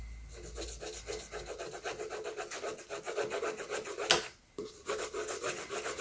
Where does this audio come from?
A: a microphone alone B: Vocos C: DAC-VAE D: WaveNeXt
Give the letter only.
A